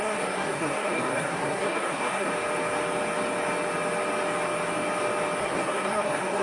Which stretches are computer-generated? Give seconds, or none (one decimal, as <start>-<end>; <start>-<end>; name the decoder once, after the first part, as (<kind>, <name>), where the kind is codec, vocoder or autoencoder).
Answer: 0.0-2.3 (codec, SNAC); 5.4-6.4